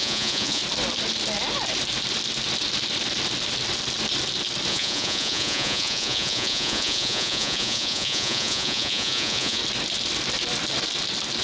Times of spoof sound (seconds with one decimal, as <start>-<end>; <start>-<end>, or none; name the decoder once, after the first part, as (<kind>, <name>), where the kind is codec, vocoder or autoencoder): 0.0-0.6 (vocoder, Vocos); 4.7-9.6